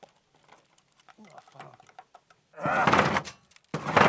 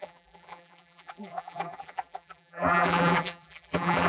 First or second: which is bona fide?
first